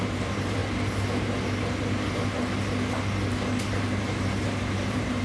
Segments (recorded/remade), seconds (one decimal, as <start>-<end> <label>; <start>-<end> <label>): 0.0-0.6 remade; 0.6-3.7 recorded; 3.7-5.2 remade